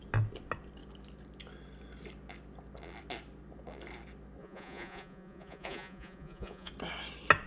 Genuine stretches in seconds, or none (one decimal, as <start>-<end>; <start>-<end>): 0.0-4.4; 6.7-7.5